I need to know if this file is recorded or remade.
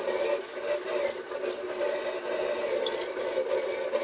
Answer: recorded